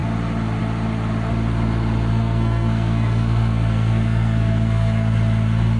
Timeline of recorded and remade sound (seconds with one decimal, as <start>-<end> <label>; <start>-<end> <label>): 0.0-2.1 recorded; 2.1-5.1 remade; 5.1-5.8 recorded